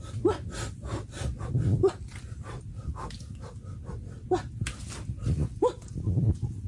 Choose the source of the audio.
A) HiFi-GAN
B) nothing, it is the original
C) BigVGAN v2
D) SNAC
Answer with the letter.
B